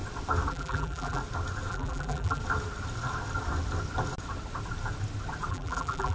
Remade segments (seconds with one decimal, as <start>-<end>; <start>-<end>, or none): 0.5-1.2; 1.7-2.4; 5.5-6.1